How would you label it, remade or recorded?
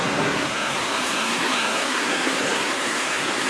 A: remade